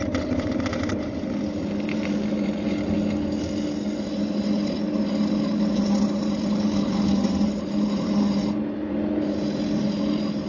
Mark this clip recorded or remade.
recorded